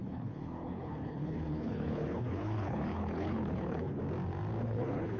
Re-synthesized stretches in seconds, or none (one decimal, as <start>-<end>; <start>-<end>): 0.0-4.0; 4.6-5.2